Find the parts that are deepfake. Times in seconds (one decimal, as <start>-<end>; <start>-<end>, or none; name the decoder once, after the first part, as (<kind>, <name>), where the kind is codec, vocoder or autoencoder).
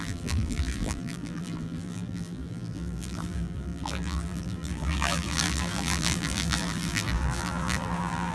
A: 0.0-8.3 (vocoder, BigVGAN v2)